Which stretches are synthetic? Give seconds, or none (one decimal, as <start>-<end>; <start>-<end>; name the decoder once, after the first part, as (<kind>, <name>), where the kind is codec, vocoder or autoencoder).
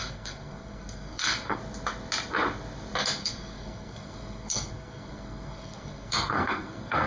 0.0-1.6 (codec, SNAC); 3.2-7.1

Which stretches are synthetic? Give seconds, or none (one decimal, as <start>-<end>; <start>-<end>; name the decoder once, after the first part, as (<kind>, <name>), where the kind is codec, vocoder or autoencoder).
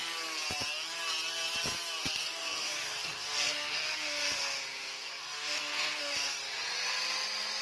2.0-6.0 (codec, SNAC)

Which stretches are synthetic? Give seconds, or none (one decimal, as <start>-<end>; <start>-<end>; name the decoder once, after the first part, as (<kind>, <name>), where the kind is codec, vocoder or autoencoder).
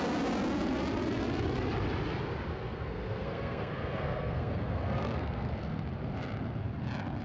2.5-5.5 (codec, SNAC)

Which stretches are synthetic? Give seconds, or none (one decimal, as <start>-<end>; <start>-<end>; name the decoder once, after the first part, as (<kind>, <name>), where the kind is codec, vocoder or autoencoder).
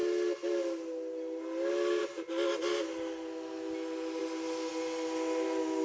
none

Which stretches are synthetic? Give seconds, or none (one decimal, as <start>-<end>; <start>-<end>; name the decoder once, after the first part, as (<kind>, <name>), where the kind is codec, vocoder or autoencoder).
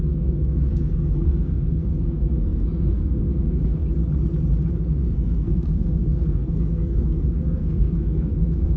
0.0-3.8 (codec, SNAC); 4.7-8.8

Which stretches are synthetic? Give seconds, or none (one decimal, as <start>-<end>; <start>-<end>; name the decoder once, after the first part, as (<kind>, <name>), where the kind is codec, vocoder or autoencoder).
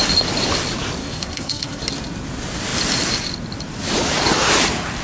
1.0-1.8 (codec, SNAC)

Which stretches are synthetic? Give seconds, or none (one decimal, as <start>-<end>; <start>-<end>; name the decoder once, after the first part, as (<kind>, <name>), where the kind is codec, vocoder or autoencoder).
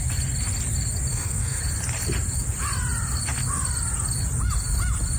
1.1-1.6 (codec, SNAC)